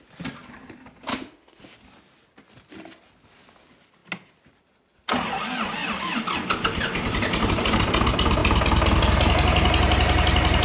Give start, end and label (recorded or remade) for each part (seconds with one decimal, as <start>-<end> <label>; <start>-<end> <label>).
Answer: 0.0-1.1 recorded; 1.1-1.6 remade; 1.6-10.6 recorded